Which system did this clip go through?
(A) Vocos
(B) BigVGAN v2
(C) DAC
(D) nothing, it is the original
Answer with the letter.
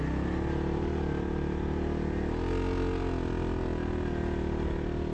D